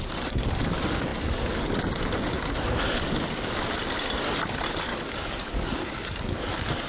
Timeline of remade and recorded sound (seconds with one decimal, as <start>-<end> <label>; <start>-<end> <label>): 0.0-4.9 recorded; 4.9-6.9 remade